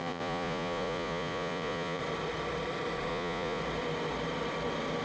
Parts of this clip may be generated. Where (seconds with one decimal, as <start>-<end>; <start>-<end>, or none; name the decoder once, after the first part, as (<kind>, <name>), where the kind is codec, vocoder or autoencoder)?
0.0-2.0 (vocoder, Vocos); 3.1-3.6